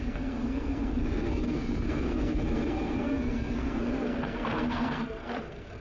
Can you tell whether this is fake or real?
fake